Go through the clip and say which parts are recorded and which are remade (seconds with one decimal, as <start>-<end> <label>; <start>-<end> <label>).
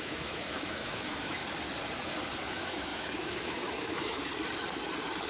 0.0-1.4 remade; 1.4-2.5 recorded; 2.5-4.3 remade; 4.3-5.3 recorded